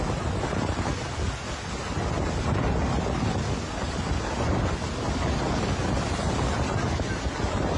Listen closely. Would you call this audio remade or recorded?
recorded